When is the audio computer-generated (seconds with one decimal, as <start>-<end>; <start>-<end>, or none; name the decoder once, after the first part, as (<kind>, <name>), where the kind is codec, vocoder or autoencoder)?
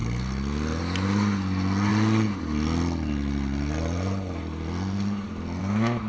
none